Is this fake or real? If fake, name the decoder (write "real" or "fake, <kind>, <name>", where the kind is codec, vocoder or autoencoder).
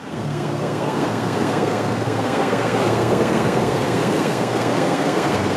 fake, codec, SNAC